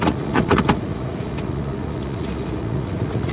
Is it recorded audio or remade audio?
remade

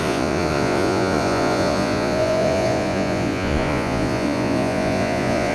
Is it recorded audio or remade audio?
remade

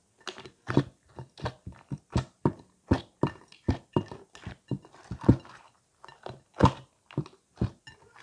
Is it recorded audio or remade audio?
recorded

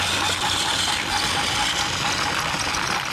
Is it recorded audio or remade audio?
recorded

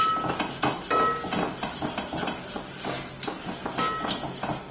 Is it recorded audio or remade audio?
recorded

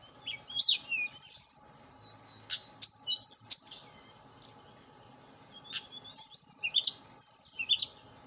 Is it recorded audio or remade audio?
recorded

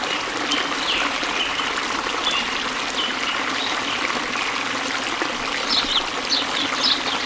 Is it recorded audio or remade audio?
recorded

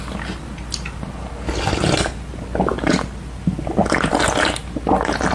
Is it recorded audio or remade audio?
recorded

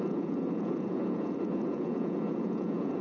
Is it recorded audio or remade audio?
remade